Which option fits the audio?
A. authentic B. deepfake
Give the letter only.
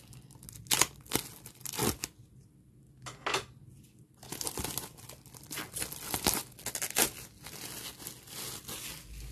A